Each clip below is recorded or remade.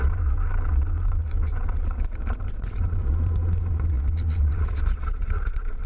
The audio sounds remade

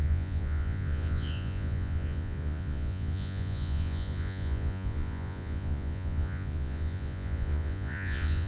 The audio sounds remade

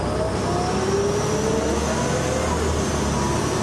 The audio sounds recorded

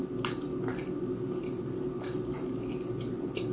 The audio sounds recorded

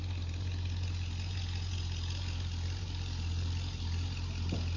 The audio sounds recorded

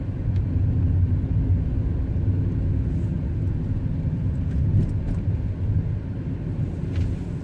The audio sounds recorded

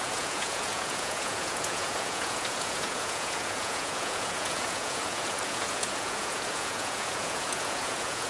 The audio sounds remade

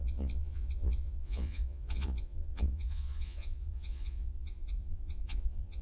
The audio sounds remade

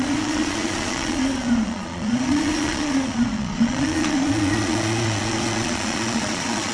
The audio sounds remade